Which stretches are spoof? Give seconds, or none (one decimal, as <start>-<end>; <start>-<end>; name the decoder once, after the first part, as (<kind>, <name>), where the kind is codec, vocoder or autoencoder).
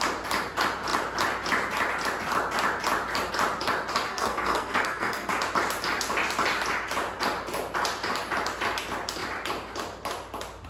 4.1-5.3 (codec, SNAC)